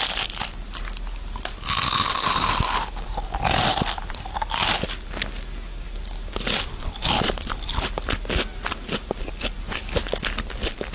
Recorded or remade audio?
recorded